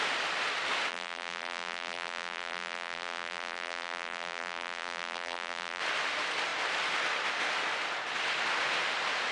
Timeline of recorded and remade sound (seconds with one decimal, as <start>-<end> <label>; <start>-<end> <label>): 0.0-0.9 recorded; 0.9-5.8 remade; 5.8-9.3 recorded